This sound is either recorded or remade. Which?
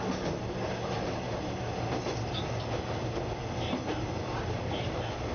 recorded